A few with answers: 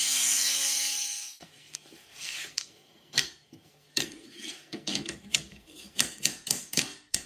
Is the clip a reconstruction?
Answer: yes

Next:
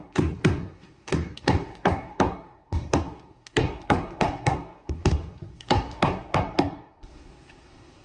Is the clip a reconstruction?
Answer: yes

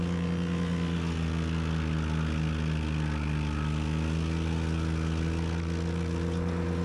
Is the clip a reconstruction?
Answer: no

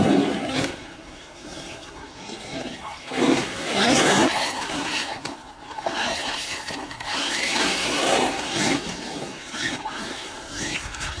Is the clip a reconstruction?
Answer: yes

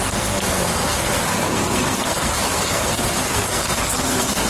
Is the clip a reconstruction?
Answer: yes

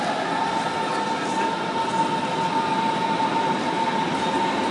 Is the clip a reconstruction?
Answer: no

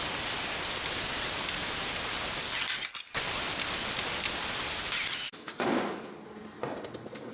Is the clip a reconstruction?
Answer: no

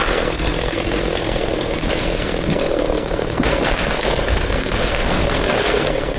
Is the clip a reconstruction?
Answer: yes